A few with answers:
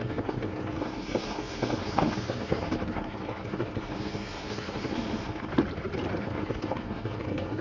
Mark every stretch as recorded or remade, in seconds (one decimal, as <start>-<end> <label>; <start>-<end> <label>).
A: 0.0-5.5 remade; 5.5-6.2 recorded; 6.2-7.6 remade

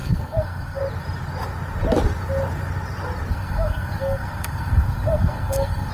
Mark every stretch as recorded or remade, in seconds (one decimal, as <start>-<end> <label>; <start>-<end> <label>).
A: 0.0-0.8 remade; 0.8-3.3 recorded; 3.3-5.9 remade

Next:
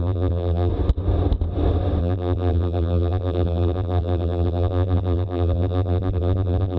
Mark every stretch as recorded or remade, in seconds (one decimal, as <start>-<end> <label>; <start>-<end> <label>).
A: 0.0-0.7 remade; 0.7-2.0 recorded; 2.0-6.8 remade